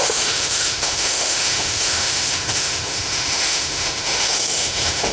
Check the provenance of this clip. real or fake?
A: fake